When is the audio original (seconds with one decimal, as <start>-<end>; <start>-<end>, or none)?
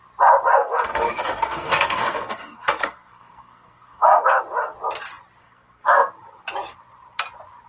0.0-0.6; 4.4-5.4; 6.1-7.7